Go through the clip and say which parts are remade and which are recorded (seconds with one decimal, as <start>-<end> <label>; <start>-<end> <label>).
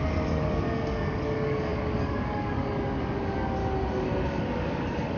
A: 0.0-3.6 remade; 3.6-4.4 recorded; 4.4-5.2 remade